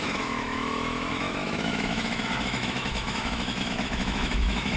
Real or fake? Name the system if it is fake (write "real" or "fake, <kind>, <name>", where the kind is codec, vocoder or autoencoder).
fake, autoencoder, DAC-VAE